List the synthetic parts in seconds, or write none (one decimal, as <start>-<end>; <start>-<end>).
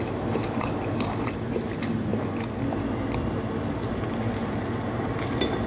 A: none